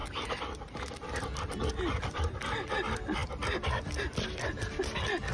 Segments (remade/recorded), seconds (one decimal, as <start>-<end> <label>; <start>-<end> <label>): 0.0-2.4 remade; 2.4-3.2 recorded; 3.2-3.9 remade; 3.9-5.3 recorded